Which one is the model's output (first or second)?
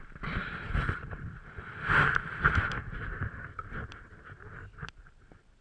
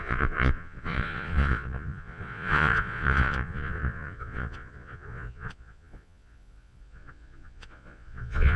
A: second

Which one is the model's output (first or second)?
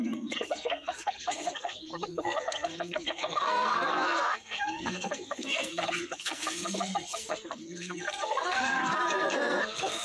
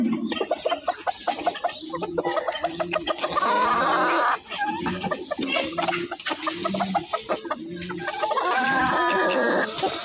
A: first